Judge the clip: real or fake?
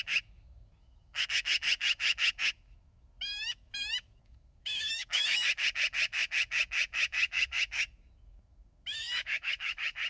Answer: fake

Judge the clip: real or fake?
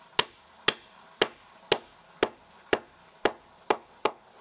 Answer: real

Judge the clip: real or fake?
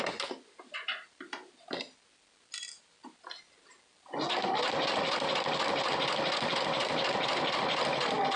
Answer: real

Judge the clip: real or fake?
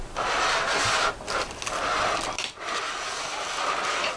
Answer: real